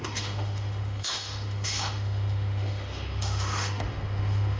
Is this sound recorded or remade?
remade